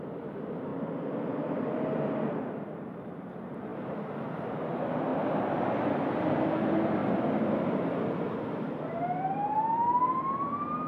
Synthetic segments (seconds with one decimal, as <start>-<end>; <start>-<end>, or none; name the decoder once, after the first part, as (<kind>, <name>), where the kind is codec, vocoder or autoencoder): 0.7-2.4 (vocoder, BigVGAN v2); 3.7-4.5; 5.1-5.9; 7.0-8.2